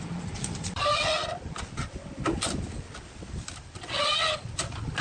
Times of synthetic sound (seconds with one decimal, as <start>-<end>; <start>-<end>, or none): none